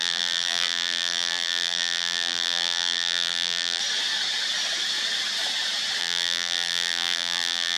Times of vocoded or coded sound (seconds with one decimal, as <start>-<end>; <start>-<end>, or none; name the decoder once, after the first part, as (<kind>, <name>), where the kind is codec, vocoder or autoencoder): 0.0-3.8 (vocoder, BigVGAN v2); 6.0-7.8